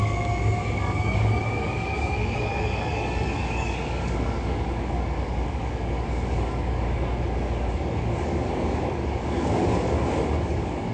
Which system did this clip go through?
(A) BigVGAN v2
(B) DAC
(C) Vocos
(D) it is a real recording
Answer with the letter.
B